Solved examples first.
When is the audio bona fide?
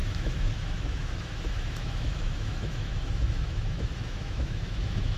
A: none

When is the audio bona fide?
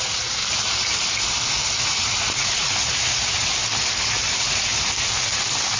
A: 0.4-1.8; 3.5-4.3; 4.7-5.8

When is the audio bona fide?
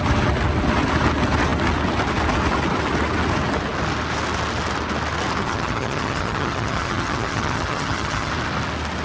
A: 0.0-5.4; 8.3-9.0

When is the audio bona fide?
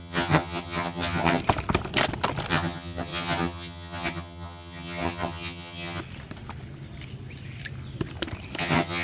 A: 1.4-2.5; 6.0-8.6